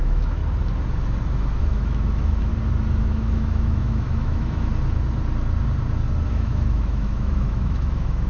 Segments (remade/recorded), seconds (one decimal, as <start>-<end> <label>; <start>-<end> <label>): 0.0-0.4 remade; 0.4-1.6 recorded; 1.6-2.5 remade; 2.5-3.0 recorded; 3.0-4.7 remade; 4.7-6.3 recorded; 6.3-8.3 remade